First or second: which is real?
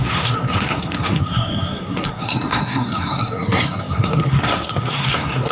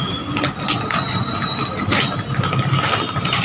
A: second